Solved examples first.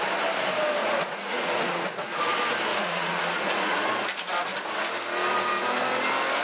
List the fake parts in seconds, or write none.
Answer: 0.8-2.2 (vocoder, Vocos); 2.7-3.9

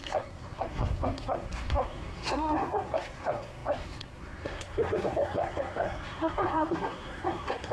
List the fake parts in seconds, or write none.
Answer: 0.0-7.7 (codec, SNAC)

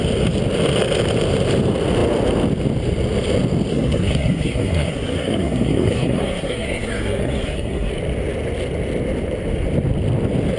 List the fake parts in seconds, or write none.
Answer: 3.7-7.9 (codec, SNAC)